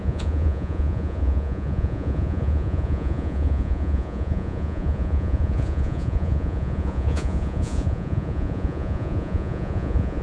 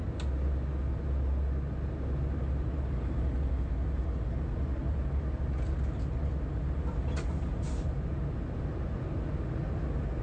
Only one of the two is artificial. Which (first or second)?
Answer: first